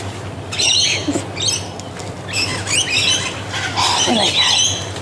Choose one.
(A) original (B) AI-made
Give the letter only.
A